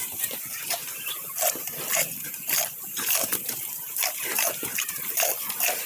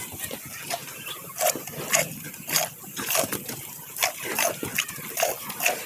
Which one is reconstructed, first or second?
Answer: first